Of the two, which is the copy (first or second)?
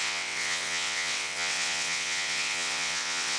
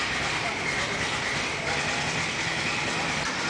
first